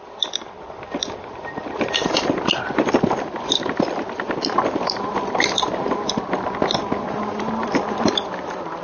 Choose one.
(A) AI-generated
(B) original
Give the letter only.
B